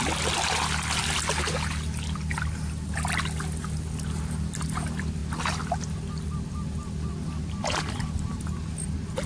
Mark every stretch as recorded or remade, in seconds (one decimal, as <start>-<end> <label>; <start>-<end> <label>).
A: 0.0-9.3 recorded